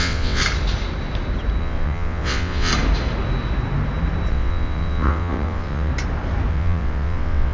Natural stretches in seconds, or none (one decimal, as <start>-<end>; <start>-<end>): 0.4-1.6; 2.7-4.3; 5.9-6.5